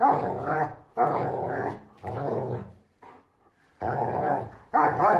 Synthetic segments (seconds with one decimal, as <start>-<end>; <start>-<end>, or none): 0.0-1.6; 2.1-2.6; 4.2-5.2